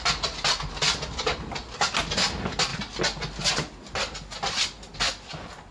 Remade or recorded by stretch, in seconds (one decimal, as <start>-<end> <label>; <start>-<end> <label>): 0.0-5.7 recorded